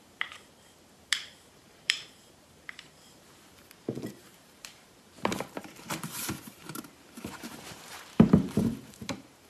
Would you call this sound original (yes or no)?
no